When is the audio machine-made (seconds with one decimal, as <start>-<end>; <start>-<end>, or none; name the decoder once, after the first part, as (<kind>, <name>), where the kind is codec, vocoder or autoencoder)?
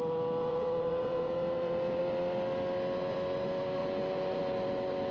0.5-2.0 (vocoder, Vocos); 3.8-4.4